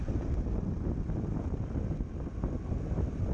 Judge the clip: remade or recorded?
recorded